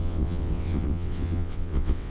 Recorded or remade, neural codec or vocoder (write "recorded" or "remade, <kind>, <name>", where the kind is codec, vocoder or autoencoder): remade, vocoder, WaveNeXt